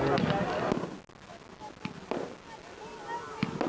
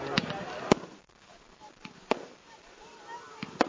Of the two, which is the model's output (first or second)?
second